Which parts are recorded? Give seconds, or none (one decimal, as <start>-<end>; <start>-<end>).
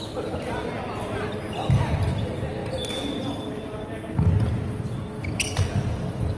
0.0-6.4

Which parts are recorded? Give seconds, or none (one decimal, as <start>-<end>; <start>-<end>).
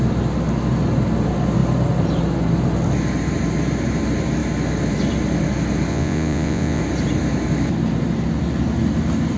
0.0-5.9; 6.8-9.4